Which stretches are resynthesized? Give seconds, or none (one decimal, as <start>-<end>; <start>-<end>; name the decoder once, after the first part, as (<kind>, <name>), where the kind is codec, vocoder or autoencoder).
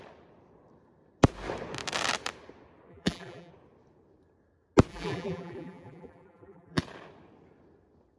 2.9-3.5 (vocoder, BigVGAN v2); 4.9-6.8